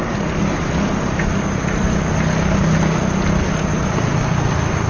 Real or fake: real